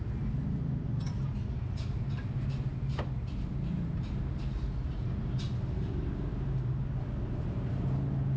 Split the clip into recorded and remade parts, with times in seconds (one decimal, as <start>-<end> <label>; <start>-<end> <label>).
0.0-8.4 recorded